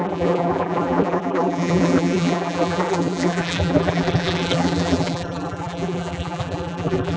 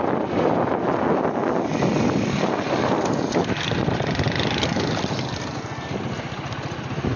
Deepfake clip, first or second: first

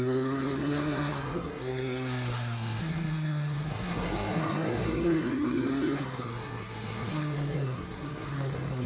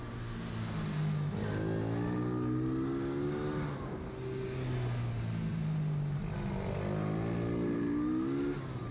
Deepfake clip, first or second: first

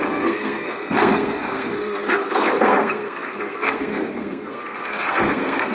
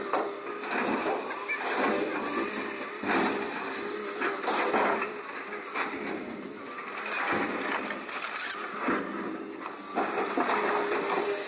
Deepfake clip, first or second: first